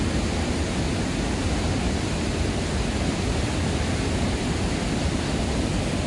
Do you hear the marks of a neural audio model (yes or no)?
no